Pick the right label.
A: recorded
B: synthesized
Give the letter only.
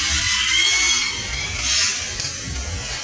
A